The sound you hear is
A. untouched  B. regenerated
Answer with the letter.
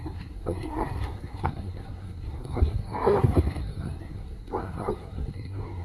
B